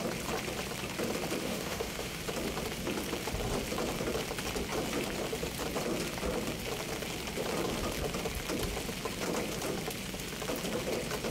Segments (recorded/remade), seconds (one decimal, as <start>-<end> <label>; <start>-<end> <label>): 0.0-1.4 recorded; 1.4-2.2 remade; 2.2-11.3 recorded